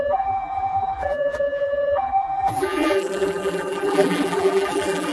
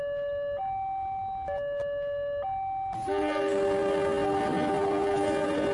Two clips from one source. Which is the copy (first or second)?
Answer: first